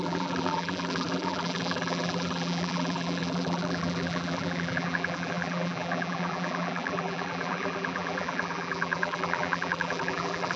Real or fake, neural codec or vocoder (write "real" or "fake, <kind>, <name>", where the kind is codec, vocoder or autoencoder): fake, vocoder, BigVGAN v2